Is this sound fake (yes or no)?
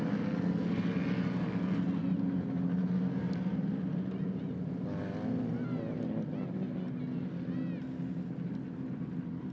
no